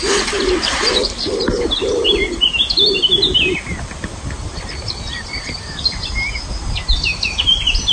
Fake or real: real